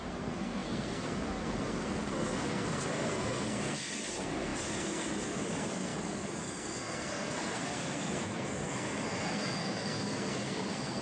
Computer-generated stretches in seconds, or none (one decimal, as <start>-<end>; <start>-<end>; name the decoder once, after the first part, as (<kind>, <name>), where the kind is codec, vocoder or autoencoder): 0.0-11.0 (codec, SNAC)

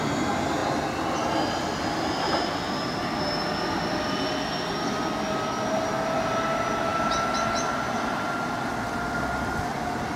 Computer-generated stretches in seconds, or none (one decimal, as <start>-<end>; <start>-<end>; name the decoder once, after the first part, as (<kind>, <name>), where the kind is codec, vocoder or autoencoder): none

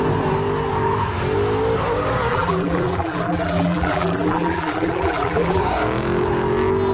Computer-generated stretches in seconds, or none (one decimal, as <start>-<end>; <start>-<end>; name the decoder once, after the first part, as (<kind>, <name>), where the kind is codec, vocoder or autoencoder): 2.3-5.6 (vocoder, BigVGAN v2)

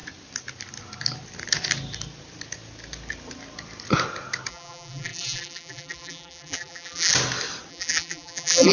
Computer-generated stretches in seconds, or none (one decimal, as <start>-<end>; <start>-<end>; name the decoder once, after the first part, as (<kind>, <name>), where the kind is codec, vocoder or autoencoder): 4.5-7.1 (vocoder, BigVGAN v2); 7.7-8.7

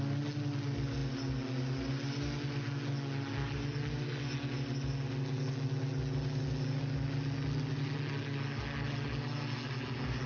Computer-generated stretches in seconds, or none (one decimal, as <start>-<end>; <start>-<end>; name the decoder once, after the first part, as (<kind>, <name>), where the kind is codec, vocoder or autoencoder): none